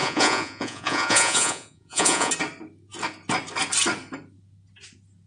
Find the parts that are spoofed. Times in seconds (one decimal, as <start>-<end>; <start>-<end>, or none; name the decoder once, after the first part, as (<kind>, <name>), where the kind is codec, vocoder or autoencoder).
0.0-2.3 (vocoder, Vocos)